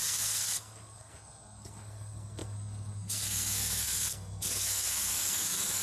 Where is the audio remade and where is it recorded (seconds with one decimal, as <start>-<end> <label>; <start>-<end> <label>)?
0.0-5.8 remade